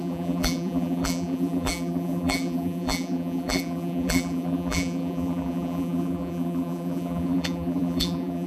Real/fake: fake